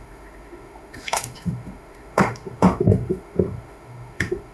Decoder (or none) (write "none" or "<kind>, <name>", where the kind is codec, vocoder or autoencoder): autoencoder, DAC-VAE